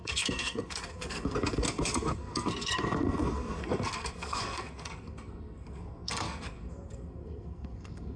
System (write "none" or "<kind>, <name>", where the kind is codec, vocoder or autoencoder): codec, SNAC